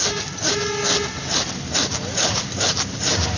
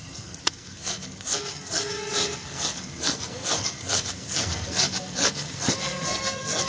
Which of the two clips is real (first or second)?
first